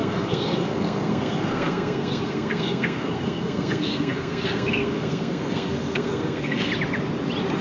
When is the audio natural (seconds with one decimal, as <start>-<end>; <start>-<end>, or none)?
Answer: 6.7-7.6